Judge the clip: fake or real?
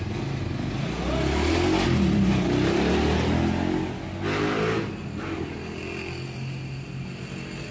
real